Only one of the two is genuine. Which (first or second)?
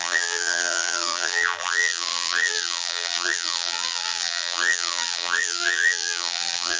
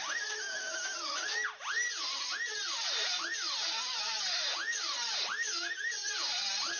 second